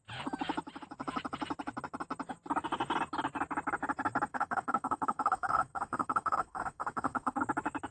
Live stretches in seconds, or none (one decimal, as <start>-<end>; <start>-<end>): 0.0-4.3; 7.4-7.9